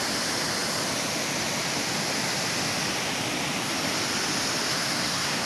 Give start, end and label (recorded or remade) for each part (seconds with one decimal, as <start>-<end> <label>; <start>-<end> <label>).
0.0-4.7 recorded; 4.7-5.5 remade